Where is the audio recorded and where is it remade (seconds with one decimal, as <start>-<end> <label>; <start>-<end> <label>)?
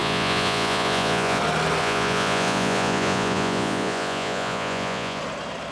0.0-1.4 remade; 1.4-1.8 recorded; 1.8-5.2 remade; 5.2-5.7 recorded